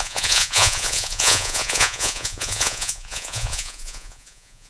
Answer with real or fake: fake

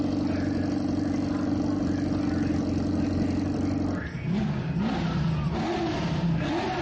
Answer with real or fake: real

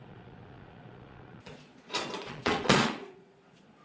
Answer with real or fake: fake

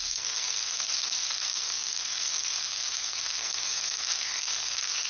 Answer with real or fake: fake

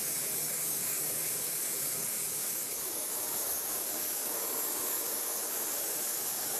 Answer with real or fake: fake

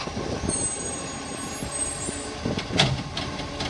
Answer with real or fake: real